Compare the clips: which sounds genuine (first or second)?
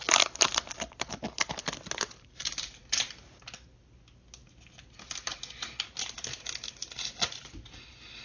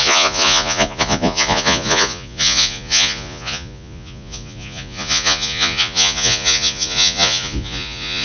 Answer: first